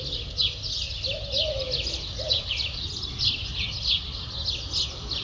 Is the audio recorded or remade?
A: recorded